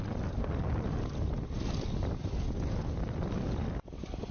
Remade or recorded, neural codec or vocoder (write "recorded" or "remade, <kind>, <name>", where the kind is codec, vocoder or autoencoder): recorded